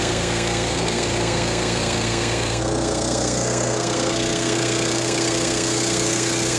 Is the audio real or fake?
fake